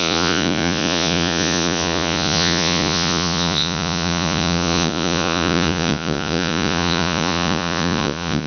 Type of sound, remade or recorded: remade